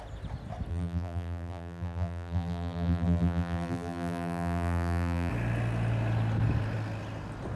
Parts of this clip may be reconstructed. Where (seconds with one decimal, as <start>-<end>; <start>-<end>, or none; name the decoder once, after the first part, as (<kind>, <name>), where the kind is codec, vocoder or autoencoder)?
0.7-5.3 (vocoder, BigVGAN v2)

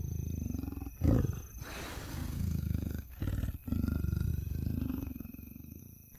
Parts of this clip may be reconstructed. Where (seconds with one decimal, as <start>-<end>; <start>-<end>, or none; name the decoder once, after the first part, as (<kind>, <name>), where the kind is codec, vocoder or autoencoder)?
2.1-3.2 (codec, SNAC); 4.9-5.8

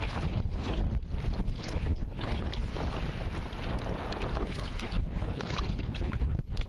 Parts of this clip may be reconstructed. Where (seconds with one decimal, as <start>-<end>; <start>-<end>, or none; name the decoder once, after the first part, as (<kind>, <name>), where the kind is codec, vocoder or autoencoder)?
0.0-0.8 (codec, HILCodec); 1.4-2.7; 4.3-6.7

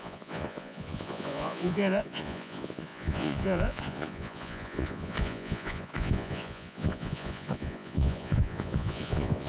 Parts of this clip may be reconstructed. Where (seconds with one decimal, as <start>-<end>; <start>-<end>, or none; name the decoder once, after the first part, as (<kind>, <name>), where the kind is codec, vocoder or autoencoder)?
0.0-9.5 (vocoder, Vocos)

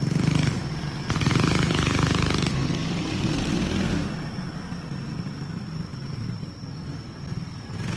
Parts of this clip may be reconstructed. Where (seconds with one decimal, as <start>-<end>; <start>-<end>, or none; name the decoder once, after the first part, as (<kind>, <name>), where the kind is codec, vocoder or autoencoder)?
2.8-3.4 (vocoder, BigVGAN v2); 5.9-6.4

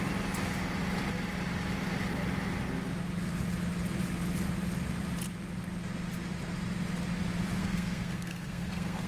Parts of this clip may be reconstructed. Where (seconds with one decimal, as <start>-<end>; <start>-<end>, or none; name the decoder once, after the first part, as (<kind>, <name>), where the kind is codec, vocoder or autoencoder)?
7.6-9.1 (codec, SNAC)